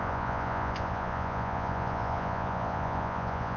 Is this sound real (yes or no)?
no